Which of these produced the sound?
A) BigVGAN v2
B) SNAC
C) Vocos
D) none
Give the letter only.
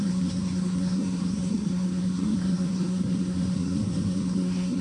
B